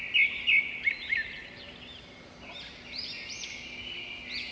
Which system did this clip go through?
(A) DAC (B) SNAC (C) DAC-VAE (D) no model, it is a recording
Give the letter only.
D